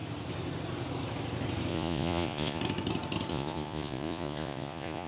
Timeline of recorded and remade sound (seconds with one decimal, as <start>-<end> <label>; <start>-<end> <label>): 0.0-1.7 recorded; 1.7-2.6 remade; 2.6-3.3 recorded; 3.3-5.1 remade